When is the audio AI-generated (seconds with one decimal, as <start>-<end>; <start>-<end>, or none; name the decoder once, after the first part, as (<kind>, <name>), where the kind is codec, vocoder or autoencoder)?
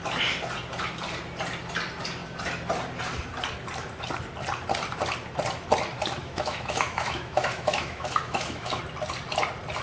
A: 6.2-8.8 (autoencoder, DAC-VAE)